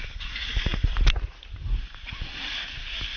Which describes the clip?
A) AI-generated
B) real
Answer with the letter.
B